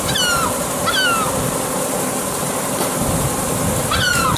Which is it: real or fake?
real